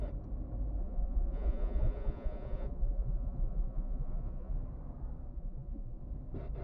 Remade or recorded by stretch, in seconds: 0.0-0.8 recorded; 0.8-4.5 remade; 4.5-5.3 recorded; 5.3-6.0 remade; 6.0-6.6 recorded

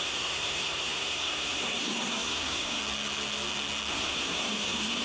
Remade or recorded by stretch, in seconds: 0.0-2.8 remade; 2.8-3.9 recorded; 3.9-5.0 remade